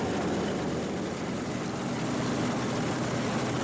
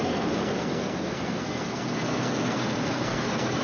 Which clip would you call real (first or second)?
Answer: first